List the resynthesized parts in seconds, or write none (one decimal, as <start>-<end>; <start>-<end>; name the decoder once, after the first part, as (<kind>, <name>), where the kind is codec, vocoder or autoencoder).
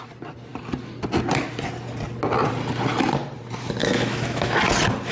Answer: 3.8-4.6 (autoencoder, DAC-VAE)